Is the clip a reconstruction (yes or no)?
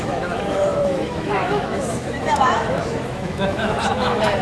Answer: yes